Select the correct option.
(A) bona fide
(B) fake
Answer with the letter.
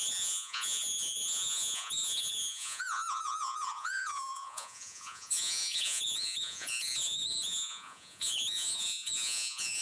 B